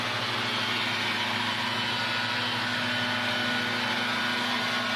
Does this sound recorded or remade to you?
recorded